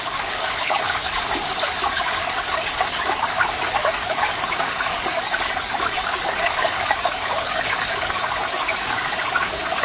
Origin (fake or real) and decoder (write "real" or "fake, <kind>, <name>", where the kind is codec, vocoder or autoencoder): fake, codec, DAC